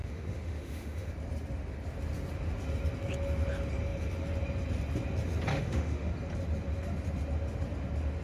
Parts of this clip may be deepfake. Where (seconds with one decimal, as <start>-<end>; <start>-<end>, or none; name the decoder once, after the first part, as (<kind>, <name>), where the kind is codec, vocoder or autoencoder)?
0.0-1.1 (autoencoder, DAC-VAE); 5.5-6.1